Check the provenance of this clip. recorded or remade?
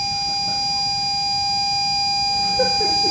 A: recorded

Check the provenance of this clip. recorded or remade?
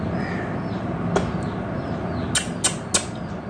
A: recorded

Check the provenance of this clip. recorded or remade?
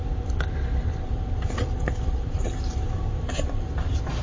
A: remade